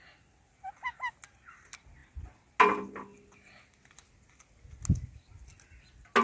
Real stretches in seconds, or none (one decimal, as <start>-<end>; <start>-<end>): 0.0-6.2